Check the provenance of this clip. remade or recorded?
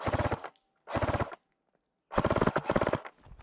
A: recorded